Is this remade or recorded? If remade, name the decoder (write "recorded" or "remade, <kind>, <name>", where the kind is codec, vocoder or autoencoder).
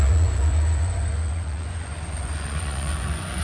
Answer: remade, vocoder, Vocos